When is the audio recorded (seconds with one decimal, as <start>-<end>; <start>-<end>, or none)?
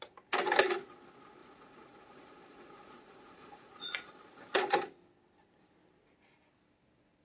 0.0-1.4; 4.1-7.2